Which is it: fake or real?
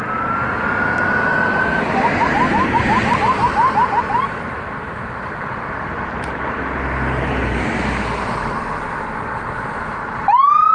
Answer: real